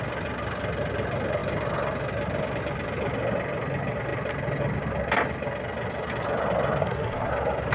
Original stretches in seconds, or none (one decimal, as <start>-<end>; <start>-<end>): 0.0-6.8; 7.3-7.7